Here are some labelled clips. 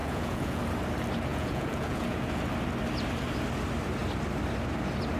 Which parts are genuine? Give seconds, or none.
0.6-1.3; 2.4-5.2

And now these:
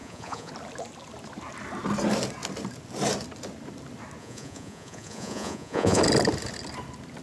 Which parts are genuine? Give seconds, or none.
0.5-4.2; 6.0-7.2

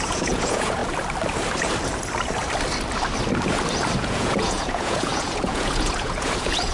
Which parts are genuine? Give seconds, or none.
0.8-4.0